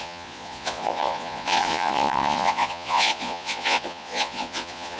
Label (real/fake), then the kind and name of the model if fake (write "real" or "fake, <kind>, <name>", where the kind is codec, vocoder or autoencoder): fake, vocoder, Vocos